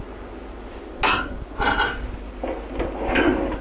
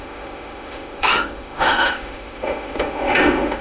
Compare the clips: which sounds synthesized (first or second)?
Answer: second